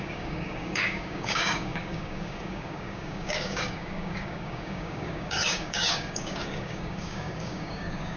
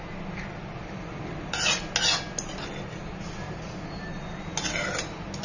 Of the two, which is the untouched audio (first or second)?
second